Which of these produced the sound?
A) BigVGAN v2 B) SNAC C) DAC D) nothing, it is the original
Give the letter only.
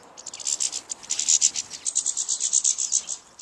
D